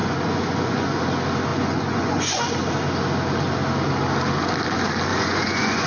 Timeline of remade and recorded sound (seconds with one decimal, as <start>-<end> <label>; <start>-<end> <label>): 0.0-1.0 remade; 1.0-1.5 recorded; 1.5-2.4 remade; 2.4-5.1 recorded; 5.1-5.9 remade